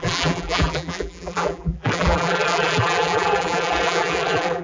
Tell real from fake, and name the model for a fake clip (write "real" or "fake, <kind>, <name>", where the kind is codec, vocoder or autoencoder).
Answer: fake, vocoder, BigVGAN v2